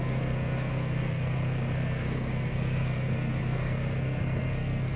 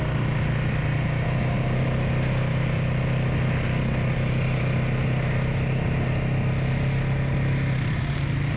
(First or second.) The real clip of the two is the second